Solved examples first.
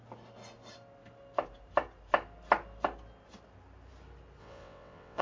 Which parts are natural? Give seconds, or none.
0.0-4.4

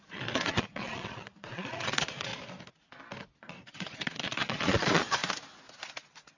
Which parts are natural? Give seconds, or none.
2.3-3.4; 5.2-6.4

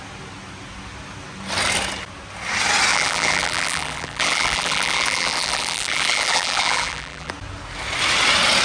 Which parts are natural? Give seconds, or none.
0.0-2.9; 7.3-8.6

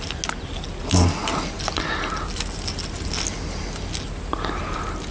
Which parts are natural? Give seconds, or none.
0.0-5.1

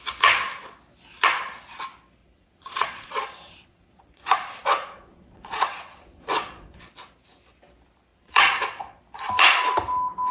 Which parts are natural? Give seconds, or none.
0.0-2.2; 6.8-8.1; 9.0-10.3

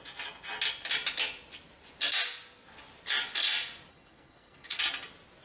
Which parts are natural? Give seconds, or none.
0.0-3.9; 4.8-5.4

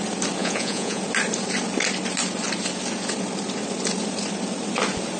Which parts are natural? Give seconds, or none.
0.0-0.4; 1.0-5.2